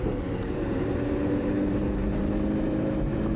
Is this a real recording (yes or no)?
no